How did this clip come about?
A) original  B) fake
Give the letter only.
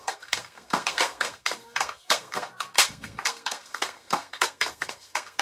B